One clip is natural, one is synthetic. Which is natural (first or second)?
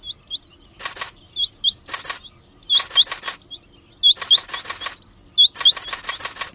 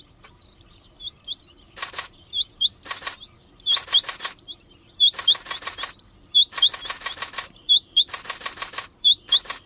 first